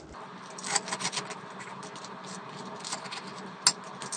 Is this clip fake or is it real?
real